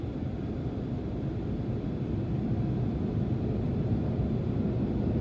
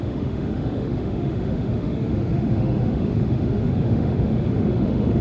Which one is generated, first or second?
second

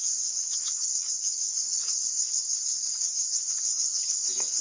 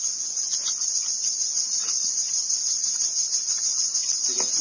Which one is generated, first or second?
first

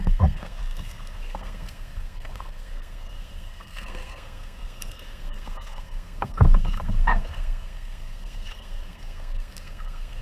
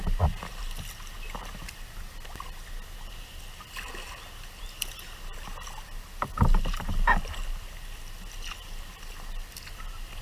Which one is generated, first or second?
first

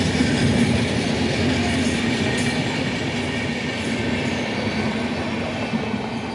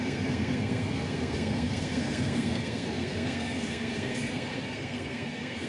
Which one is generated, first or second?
second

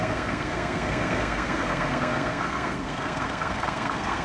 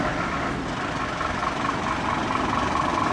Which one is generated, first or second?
first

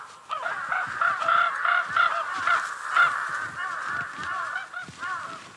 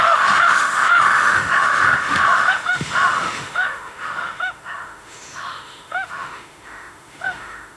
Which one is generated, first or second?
second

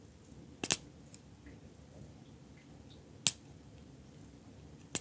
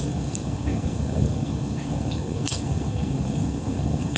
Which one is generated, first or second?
second